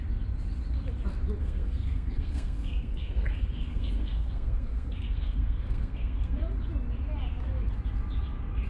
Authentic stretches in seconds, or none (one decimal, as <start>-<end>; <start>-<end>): 0.0-1.4; 6.4-8.7